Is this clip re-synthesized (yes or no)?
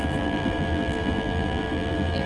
yes